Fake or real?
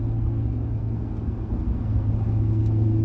fake